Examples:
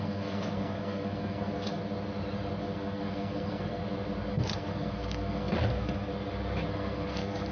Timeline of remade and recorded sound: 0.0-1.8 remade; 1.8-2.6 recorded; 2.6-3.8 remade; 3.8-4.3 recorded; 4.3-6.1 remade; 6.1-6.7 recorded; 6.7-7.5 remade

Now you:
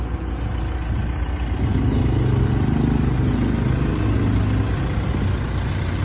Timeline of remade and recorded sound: 0.0-6.0 recorded

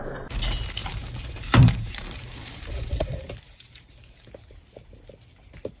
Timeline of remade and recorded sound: 0.0-0.8 recorded; 0.8-4.3 remade; 4.3-5.8 recorded

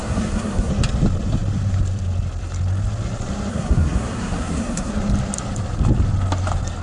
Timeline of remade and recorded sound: 0.0-0.7 remade; 0.7-3.5 recorded; 3.5-4.9 remade; 4.9-6.8 recorded

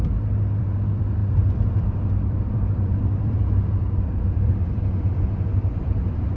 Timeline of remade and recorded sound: 0.0-6.4 remade

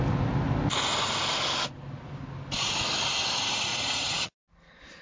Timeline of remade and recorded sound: 0.0-3.7 recorded; 3.7-4.3 remade; 4.3-5.0 recorded

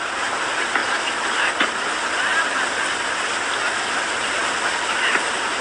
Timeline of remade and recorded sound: 0.0-0.8 remade; 0.8-1.7 recorded; 1.7-2.3 remade; 2.3-3.7 recorded; 3.7-5.6 remade

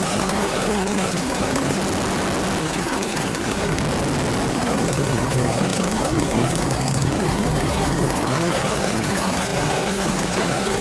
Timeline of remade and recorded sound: 0.0-1.8 remade; 1.8-2.6 recorded; 2.6-3.8 remade; 3.8-4.5 recorded; 4.5-10.8 remade